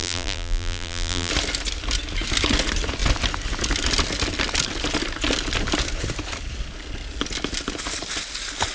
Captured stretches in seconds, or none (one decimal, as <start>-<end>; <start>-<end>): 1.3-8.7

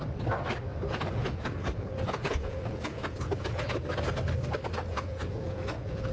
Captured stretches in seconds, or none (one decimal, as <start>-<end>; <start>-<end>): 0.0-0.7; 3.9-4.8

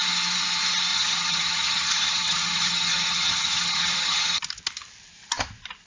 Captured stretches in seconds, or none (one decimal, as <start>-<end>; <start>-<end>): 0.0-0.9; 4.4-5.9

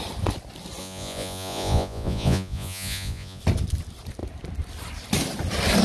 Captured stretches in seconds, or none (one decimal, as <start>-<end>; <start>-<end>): 0.0-0.8; 3.4-5.8

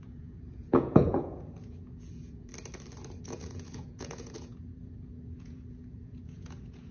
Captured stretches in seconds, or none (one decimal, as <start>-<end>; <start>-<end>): 2.5-3.2

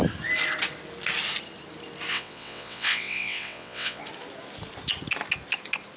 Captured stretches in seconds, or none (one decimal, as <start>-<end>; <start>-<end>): 0.0-2.1; 4.0-6.0